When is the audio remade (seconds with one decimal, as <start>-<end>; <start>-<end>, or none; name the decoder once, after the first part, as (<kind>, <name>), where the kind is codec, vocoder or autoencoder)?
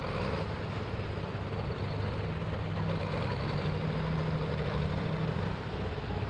none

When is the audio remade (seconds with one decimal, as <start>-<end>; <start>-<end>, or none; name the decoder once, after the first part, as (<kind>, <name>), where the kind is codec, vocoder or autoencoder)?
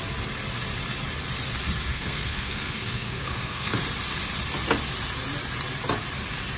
1.9-3.8 (codec, SNAC)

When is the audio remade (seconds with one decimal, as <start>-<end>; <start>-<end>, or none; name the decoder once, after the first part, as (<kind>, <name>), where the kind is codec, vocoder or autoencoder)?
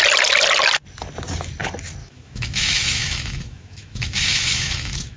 2.0-5.2 (autoencoder, DAC-VAE)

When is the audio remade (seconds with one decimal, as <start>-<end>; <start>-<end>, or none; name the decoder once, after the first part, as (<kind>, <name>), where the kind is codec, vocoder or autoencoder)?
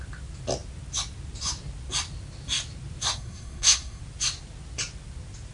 3.0-4.0 (codec, SNAC)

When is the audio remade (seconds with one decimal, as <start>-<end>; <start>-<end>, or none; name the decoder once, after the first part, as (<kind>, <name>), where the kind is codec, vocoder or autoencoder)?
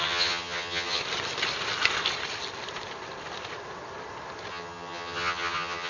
0.0-1.0 (vocoder, HiFi-GAN); 4.5-5.9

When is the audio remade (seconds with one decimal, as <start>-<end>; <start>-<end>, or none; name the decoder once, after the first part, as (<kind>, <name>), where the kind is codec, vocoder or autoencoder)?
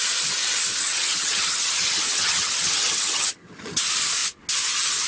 0.7-3.8 (vocoder, HiFi-GAN)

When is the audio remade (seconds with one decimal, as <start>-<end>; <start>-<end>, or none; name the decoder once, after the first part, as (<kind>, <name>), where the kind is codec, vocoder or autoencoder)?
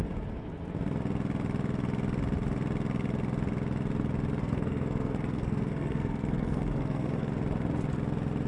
4.4-7.3 (codec, SNAC)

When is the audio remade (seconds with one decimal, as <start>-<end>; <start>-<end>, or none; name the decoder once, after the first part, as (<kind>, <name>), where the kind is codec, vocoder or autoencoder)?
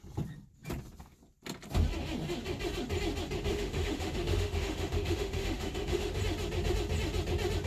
3.5-6.2 (autoencoder, DAC-VAE)